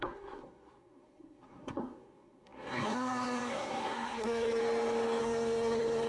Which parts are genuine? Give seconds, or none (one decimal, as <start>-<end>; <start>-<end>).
4.6-5.2